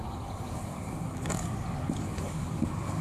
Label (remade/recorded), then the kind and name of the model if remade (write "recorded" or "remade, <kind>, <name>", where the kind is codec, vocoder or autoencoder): remade, codec, DAC